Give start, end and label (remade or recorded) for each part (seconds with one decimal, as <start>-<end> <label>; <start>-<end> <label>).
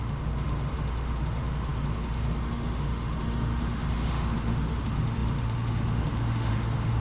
0.0-7.0 remade